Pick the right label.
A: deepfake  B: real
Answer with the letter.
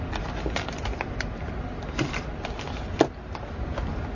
B